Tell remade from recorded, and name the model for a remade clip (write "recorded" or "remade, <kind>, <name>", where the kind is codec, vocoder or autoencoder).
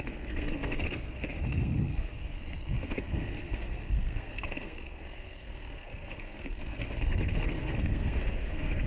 remade, codec, SNAC